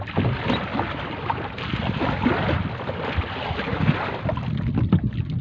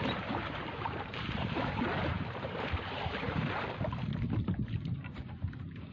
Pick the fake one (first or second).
second